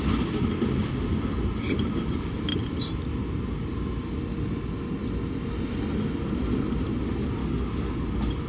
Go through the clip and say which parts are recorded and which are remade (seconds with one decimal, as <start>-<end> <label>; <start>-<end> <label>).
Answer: 0.0-7.4 recorded; 7.4-8.1 remade; 8.1-8.5 recorded